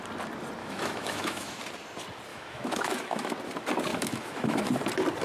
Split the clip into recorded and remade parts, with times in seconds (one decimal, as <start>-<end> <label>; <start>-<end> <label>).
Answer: 0.0-0.6 recorded; 0.6-1.6 remade; 1.6-2.3 recorded; 2.3-3.3 remade; 3.3-3.9 recorded; 3.9-4.6 remade; 4.6-5.2 recorded